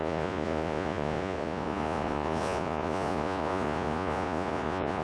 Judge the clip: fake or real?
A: fake